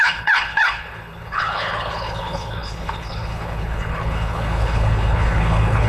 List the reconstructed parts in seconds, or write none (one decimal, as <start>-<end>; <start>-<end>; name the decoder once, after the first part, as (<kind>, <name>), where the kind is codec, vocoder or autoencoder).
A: 0.0-5.9 (codec, HILCodec)